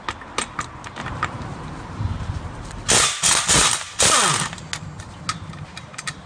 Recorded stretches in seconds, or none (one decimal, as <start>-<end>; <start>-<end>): 0.0-1.0; 2.9-6.3